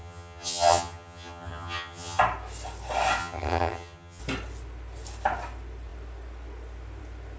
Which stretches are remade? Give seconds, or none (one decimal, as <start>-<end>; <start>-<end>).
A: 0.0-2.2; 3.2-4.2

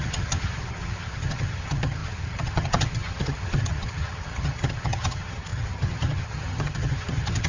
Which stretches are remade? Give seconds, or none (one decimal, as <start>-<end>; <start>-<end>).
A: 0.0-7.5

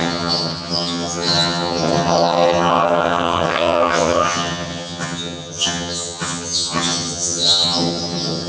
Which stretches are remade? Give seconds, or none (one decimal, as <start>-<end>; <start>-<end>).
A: 0.0-8.5